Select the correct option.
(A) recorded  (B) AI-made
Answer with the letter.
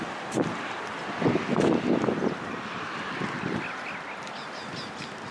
A